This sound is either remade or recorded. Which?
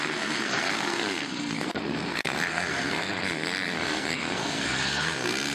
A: remade